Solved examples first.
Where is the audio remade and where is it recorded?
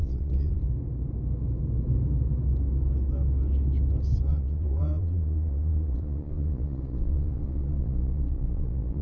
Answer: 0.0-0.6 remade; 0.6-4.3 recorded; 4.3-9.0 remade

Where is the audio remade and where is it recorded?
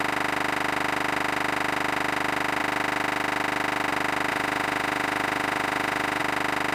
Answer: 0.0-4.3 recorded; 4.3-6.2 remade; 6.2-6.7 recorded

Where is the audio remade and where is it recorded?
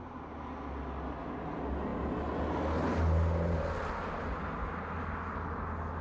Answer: 0.0-6.0 recorded